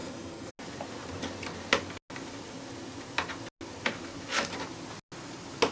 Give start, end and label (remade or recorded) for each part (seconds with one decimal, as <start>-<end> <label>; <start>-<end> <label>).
0.0-0.5 remade; 0.5-5.7 recorded